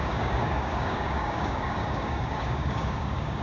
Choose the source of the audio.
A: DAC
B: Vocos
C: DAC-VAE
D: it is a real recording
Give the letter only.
A